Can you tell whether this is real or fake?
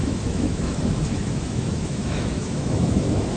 fake